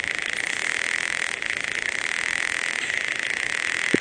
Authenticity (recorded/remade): recorded